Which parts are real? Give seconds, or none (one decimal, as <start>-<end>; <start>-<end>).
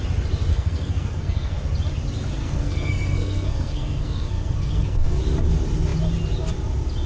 0.0-0.5; 1.6-2.4; 5.2-7.1